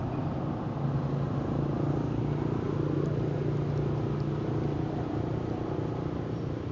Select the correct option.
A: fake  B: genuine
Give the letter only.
B